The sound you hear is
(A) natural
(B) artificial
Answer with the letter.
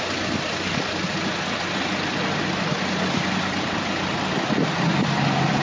A